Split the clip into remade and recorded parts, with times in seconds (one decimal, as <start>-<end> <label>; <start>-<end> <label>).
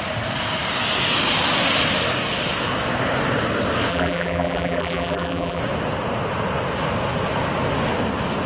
0.0-3.9 recorded; 3.9-5.6 remade; 5.6-8.5 recorded